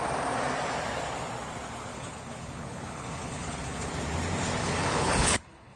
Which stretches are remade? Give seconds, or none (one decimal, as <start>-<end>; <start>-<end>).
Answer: 1.9-3.9; 4.6-5.8

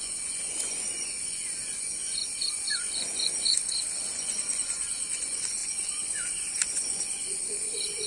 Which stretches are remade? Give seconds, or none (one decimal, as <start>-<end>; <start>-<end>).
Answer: 0.0-8.1